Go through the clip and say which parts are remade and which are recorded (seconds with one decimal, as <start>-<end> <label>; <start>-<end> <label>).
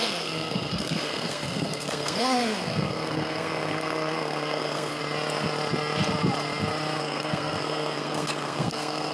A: 0.0-5.0 remade; 5.0-7.0 recorded; 7.0-9.1 remade